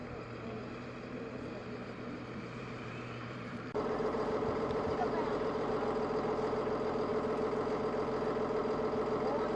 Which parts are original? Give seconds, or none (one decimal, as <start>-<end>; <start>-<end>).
0.7-1.6; 5.7-9.6

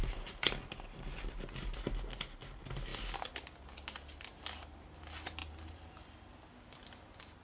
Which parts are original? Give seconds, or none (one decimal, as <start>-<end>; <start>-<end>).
0.0-5.4; 5.9-7.4

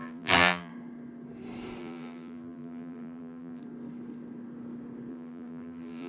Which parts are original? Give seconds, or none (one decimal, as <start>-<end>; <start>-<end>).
0.7-1.8; 3.6-5.1

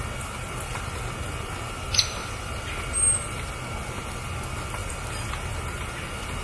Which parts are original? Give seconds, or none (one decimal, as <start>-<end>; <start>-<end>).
0.0-2.2; 2.9-6.4

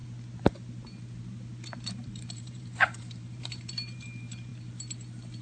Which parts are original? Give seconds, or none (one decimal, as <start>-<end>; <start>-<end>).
0.0-1.9; 4.5-5.4

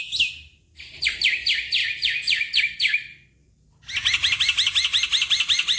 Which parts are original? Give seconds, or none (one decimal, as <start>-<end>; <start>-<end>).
0.0-3.4; 4.4-5.8

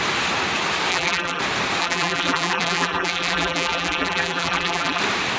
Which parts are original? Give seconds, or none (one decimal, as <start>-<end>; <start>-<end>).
0.0-0.9; 1.4-1.8; 5.0-5.4